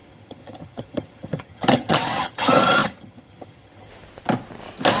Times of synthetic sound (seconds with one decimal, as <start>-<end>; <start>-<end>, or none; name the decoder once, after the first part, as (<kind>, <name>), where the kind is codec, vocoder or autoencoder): 0.0-3.9 (vocoder, HiFi-GAN)